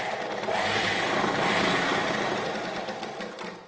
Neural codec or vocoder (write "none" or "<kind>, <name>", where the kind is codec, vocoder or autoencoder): none